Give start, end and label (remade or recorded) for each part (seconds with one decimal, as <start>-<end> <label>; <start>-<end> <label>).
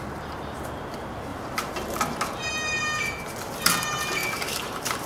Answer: 0.0-1.3 recorded; 1.3-2.0 remade; 2.0-4.2 recorded; 4.2-5.1 remade